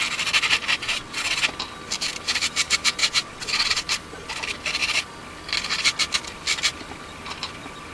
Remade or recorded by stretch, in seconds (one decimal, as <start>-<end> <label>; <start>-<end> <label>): 0.0-0.8 recorded; 0.8-1.4 remade; 1.4-3.0 recorded; 3.0-3.8 remade; 3.8-7.9 recorded